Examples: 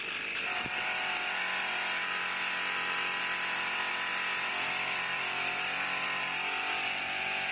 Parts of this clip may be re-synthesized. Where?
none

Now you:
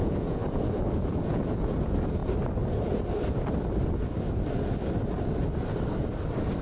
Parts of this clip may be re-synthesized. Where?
0.0-2.2 (vocoder, Vocos)

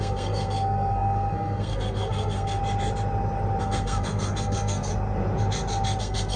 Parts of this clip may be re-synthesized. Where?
0.0-2.6 (codec, SNAC); 3.6-4.9; 6.0-6.4

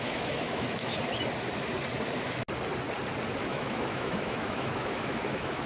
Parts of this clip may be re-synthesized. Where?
0.0-0.9 (autoencoder, DAC-VAE); 3.4-5.7

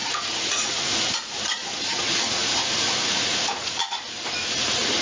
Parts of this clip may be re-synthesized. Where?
0.0-3.8 (vocoder, Vocos); 4.5-5.0

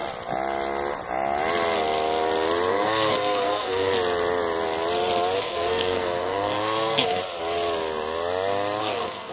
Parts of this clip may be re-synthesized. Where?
2.7-3.9 (codec, SNAC); 5.4-7.2; 8.8-9.3

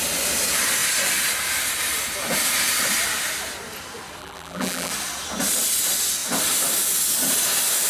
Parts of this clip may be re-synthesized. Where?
4.2-4.9 (vocoder, BigVGAN v2)